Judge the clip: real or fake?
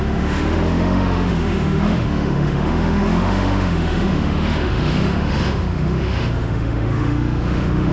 fake